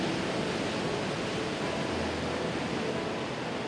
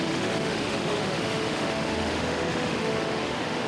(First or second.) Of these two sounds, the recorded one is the first